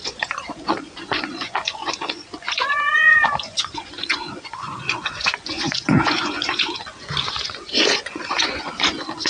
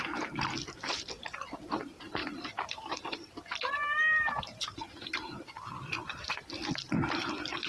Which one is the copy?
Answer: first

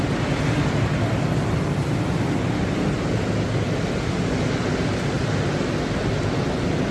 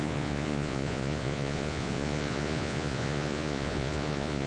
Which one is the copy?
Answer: second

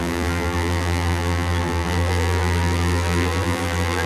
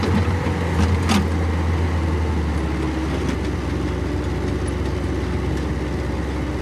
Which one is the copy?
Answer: first